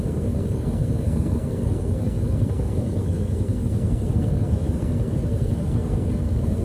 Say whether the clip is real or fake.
fake